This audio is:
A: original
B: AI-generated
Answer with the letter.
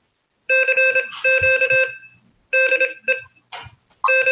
A